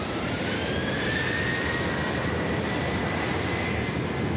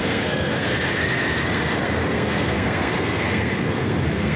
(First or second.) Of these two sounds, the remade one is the second